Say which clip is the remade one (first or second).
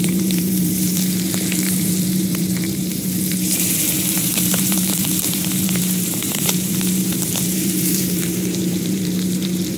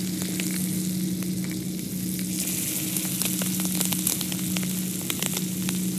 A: first